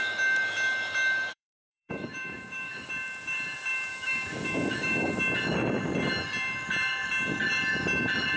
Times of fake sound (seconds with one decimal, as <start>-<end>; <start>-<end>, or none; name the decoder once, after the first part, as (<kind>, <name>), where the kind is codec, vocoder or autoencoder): 1.3-2.9 (autoencoder, DAC-VAE); 3.9-5.2